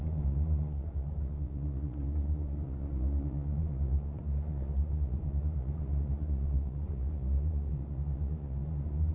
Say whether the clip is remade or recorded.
remade